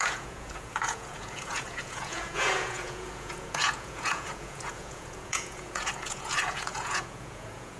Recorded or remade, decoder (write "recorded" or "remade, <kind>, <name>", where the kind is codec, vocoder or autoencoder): remade, vocoder, Vocos